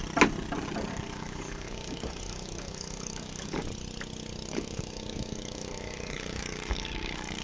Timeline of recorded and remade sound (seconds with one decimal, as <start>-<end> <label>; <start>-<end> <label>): 0.0-0.9 recorded; 0.9-3.6 remade; 3.6-4.5 recorded; 4.5-7.4 remade